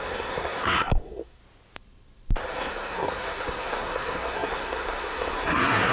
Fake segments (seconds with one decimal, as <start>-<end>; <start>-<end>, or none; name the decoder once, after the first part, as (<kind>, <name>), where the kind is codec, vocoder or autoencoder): 0.0-1.4 (codec, SNAC); 2.4-5.9